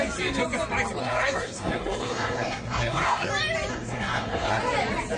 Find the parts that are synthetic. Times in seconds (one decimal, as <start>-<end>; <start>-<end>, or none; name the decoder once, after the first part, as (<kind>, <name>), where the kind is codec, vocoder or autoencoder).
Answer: 1.0-3.3 (codec, SNAC); 3.7-4.6